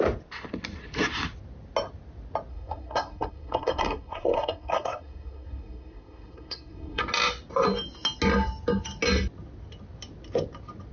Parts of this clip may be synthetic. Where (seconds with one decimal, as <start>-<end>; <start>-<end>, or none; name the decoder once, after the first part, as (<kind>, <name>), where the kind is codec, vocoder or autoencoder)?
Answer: 2.5-7.0 (codec, SNAC)